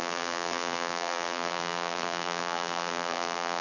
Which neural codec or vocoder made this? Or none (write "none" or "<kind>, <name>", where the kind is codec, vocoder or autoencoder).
vocoder, BigVGAN v2